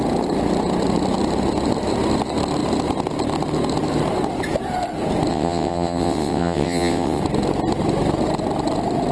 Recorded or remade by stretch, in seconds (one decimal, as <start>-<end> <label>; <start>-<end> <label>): 0.0-5.3 recorded; 5.3-7.2 remade; 7.2-9.1 recorded